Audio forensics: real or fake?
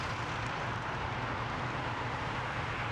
real